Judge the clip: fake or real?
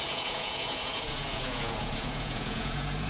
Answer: fake